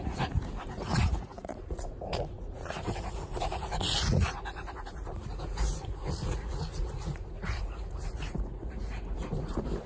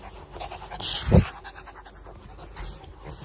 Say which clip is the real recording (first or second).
second